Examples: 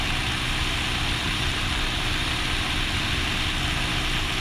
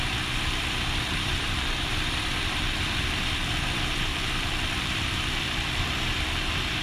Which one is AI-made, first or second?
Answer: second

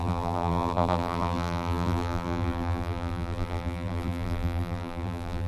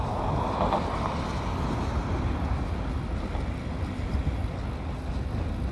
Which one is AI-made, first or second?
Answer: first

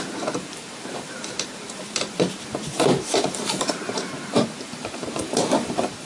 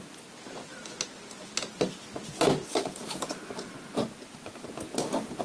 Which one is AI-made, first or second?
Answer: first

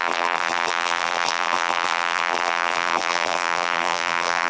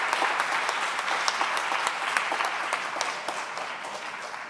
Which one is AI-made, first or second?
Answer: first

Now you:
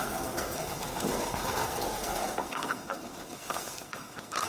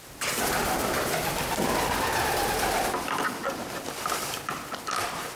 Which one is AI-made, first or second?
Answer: first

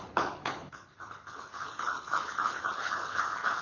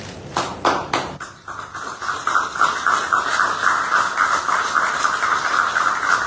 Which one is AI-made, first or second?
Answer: first